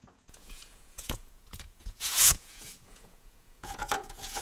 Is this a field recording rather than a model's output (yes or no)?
no